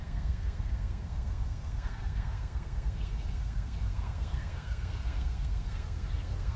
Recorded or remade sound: remade